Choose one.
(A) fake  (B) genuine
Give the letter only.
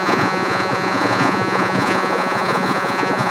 A